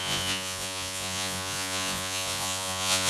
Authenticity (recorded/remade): remade